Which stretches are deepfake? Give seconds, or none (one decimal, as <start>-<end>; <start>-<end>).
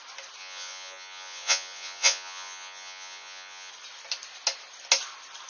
0.4-3.7